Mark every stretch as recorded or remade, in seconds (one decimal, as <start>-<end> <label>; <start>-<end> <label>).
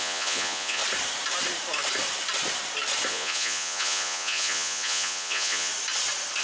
0.0-0.8 remade; 0.8-3.1 recorded; 3.1-5.7 remade; 5.7-6.4 recorded